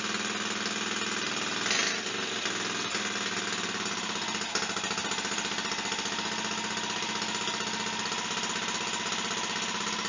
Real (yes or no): yes